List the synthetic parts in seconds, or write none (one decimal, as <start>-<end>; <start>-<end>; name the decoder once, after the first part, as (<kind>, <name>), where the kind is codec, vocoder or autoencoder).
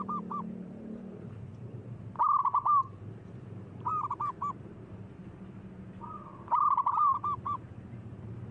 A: 0.0-1.8 (vocoder, BigVGAN v2); 2.4-5.2; 6.9-8.5